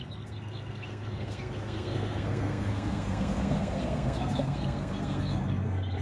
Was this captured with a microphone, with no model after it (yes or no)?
no